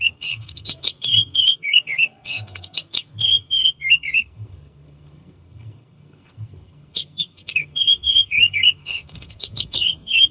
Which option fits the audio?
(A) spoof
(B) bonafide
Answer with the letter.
A